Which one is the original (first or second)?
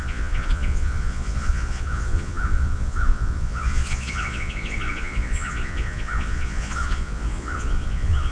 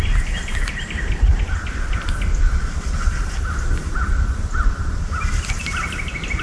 second